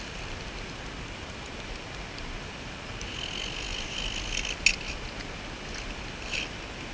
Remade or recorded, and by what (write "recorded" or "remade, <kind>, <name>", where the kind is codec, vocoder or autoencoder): recorded